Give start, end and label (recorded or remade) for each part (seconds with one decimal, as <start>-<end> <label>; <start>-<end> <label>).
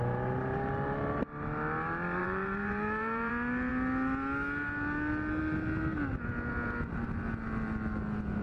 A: 0.0-2.2 recorded; 2.2-3.3 remade; 3.3-8.4 recorded